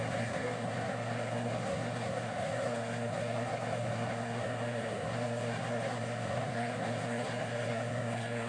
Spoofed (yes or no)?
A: yes